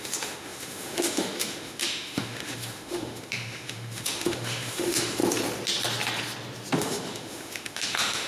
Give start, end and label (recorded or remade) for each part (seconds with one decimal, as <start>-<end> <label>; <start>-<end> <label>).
0.0-5.2 remade; 5.2-6.8 recorded; 6.8-8.3 remade